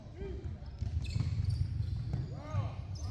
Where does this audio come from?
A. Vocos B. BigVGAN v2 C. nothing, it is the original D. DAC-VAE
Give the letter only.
C